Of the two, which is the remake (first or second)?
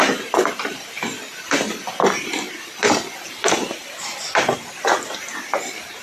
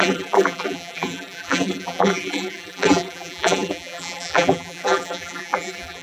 second